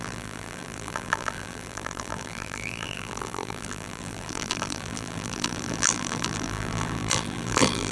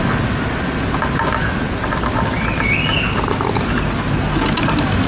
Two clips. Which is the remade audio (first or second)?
first